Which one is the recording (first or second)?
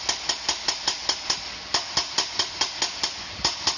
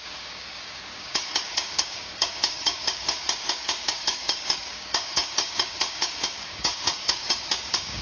first